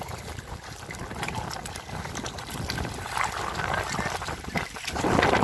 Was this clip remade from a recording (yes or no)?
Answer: no